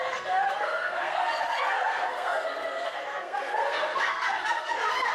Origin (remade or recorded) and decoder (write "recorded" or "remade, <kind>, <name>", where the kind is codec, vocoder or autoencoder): remade, codec, SNAC